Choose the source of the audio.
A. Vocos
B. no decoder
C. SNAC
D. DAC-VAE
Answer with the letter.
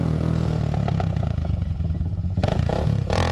A